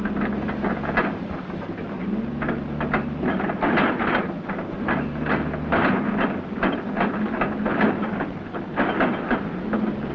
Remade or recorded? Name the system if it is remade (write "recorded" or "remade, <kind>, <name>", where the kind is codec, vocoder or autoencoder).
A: recorded